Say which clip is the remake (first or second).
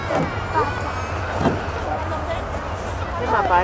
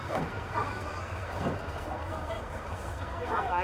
second